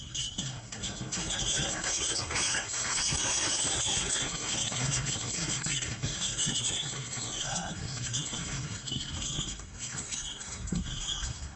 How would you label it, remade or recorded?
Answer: remade